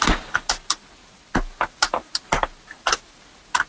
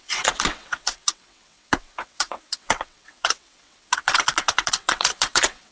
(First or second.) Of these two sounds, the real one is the first